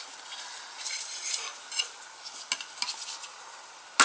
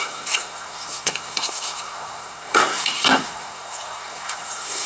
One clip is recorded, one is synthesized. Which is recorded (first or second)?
first